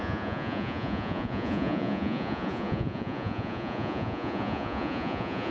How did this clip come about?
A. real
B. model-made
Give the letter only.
B